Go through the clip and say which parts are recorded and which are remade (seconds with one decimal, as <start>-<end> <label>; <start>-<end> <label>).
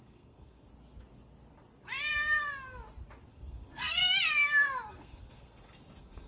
0.0-0.7 remade; 0.7-3.3 recorded; 3.3-4.0 remade; 4.0-4.9 recorded; 4.9-6.3 remade